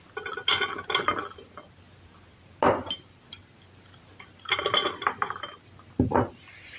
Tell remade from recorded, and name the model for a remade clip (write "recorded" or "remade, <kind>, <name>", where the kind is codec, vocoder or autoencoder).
recorded